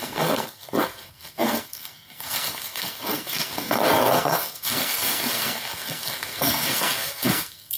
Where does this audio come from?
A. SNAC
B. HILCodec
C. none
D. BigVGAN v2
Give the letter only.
A